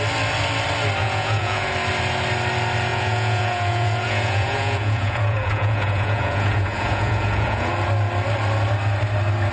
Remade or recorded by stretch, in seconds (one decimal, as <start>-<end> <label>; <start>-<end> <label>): 0.0-1.0 recorded; 1.0-1.7 remade; 1.7-2.9 recorded; 2.9-7.7 remade; 7.7-9.5 recorded